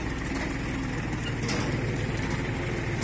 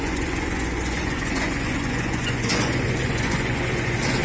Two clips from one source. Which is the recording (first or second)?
first